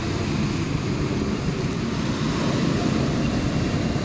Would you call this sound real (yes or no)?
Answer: yes